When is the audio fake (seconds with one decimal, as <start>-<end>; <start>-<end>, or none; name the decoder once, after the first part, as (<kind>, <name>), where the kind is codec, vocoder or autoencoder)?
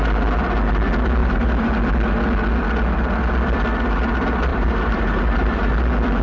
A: 1.2-1.7 (vocoder, BigVGAN v2); 4.5-5.7